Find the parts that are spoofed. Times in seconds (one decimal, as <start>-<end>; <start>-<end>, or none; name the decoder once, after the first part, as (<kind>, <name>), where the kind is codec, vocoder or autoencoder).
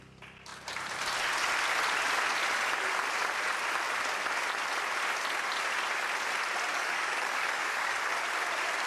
6.7-8.0 (codec, DAC)